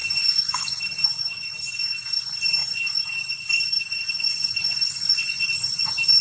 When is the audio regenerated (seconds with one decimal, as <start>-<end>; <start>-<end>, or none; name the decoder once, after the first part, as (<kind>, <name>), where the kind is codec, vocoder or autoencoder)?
0.0-0.6 (vocoder, Vocos); 2.6-5.8